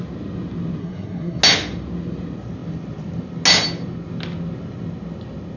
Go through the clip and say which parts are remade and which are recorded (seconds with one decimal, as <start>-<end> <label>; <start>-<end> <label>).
0.0-0.8 recorded; 0.8-1.4 remade; 1.4-5.6 recorded